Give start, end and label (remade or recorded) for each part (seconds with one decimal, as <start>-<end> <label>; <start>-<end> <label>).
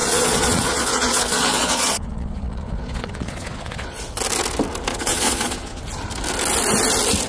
0.0-4.0 remade; 4.0-4.9 recorded; 4.9-5.8 remade; 5.8-7.3 recorded